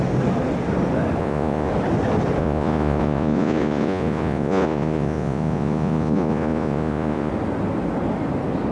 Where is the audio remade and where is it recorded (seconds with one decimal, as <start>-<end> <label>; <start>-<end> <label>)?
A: 0.0-1.2 recorded; 1.2-1.7 remade; 1.7-2.4 recorded; 2.4-7.3 remade; 7.3-8.7 recorded

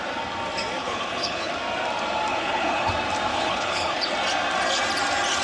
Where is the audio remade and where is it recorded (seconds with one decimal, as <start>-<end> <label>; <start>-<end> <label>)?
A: 0.0-0.8 recorded; 0.8-1.5 remade; 1.5-2.3 recorded; 2.3-2.9 remade; 2.9-3.3 recorded; 3.3-4.1 remade; 4.1-5.4 recorded

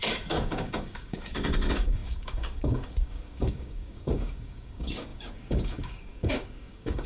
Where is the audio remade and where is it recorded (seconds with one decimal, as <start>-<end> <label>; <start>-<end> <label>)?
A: 0.0-7.1 remade